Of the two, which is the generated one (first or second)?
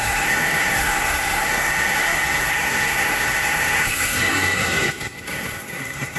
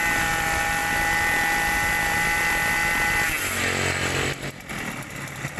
first